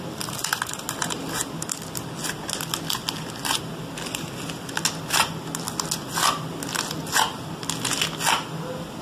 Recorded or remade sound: recorded